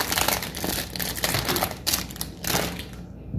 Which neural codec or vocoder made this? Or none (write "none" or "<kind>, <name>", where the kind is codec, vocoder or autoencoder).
none